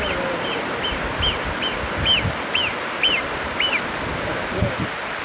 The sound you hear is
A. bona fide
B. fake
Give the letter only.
A